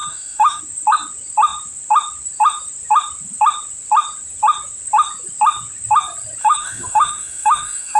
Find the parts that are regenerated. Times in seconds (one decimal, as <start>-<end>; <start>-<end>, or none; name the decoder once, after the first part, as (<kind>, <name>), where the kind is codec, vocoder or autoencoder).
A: 0.0-0.6 (autoencoder, DAC-VAE); 6.4-8.0